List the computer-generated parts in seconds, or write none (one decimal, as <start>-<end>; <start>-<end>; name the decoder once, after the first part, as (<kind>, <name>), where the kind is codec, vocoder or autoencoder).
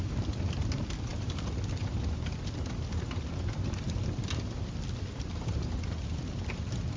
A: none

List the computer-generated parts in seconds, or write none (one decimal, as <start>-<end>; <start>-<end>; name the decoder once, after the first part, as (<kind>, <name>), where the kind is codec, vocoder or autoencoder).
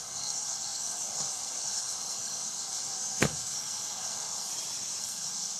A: 0.0-4.5 (codec, SNAC); 5.0-5.6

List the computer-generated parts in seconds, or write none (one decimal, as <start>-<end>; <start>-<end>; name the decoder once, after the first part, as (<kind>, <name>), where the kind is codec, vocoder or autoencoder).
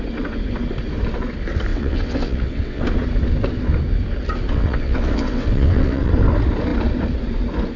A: 1.7-2.8 (vocoder, WaveNeXt); 4.5-6.1